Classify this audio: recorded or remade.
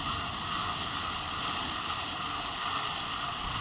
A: recorded